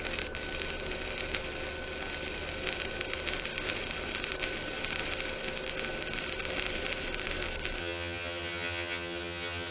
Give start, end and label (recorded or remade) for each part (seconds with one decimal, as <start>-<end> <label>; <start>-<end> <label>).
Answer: 0.0-7.8 recorded; 7.8-9.7 remade